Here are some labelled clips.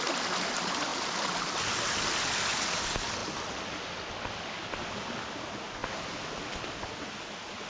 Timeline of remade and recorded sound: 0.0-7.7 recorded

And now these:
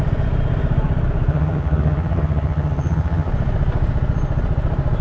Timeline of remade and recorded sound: 0.0-1.3 recorded; 1.3-3.3 remade; 3.3-5.0 recorded

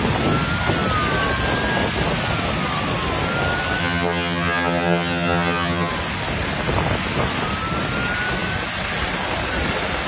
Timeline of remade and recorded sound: 0.0-3.8 recorded; 3.8-5.9 remade; 5.9-10.1 recorded

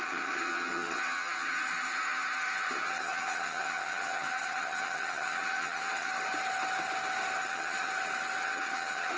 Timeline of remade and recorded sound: 0.0-6.1 remade; 6.1-7.4 recorded; 7.4-7.9 remade; 7.9-8.4 recorded; 8.4-9.2 remade

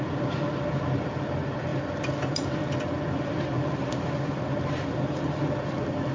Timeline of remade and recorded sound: 0.0-6.1 recorded

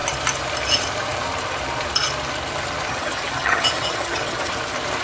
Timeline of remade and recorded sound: 0.0-2.9 recorded; 2.9-4.5 remade; 4.5-5.0 recorded